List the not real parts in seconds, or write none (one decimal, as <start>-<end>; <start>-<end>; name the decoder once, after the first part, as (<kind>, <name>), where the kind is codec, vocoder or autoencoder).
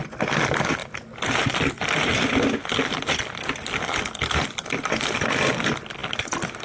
none